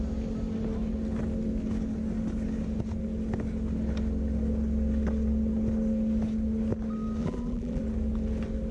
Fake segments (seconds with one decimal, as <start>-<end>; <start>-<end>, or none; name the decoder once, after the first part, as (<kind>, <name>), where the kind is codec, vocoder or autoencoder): 7.2-7.8 (vocoder, BigVGAN v2)